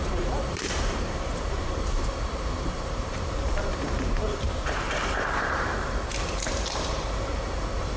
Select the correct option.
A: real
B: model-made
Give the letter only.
B